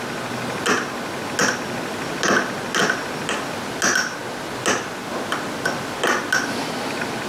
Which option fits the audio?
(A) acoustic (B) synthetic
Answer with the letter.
A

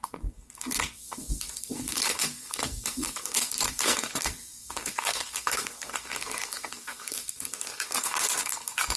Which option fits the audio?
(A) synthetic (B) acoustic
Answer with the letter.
A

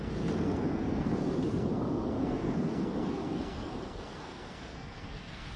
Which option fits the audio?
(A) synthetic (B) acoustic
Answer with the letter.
A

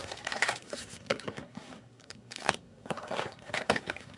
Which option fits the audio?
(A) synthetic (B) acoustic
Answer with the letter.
A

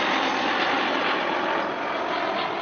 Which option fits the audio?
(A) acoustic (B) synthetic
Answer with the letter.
A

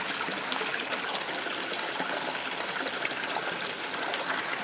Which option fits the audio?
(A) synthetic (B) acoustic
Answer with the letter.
B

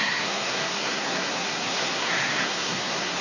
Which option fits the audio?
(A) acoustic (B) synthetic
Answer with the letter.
B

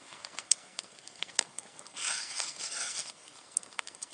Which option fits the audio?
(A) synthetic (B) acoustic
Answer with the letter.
A